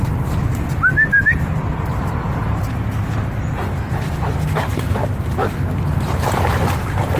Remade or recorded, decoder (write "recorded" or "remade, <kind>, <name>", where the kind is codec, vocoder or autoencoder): recorded